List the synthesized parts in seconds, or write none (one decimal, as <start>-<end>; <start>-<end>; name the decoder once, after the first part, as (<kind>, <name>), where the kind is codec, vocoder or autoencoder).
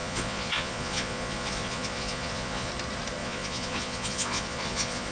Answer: 0.0-2.7 (vocoder, Vocos); 3.2-5.1